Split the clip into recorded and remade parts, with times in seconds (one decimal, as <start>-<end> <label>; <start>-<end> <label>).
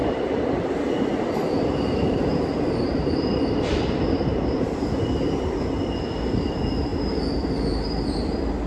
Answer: 0.0-4.9 remade; 4.9-8.7 recorded